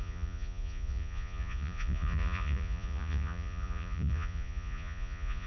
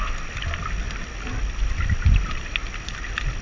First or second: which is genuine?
second